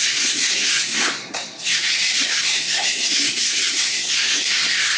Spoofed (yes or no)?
yes